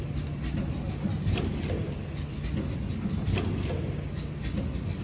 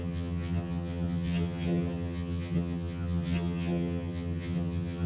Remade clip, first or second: second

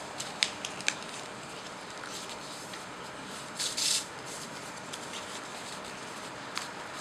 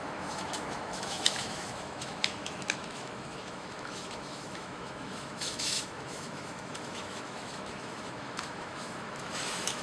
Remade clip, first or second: second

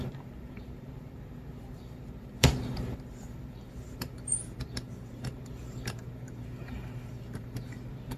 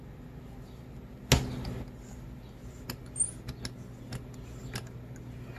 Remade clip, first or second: first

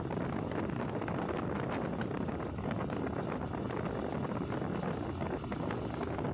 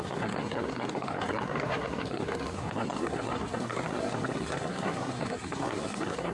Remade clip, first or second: second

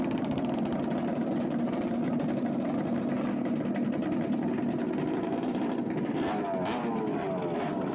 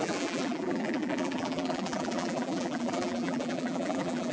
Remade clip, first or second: second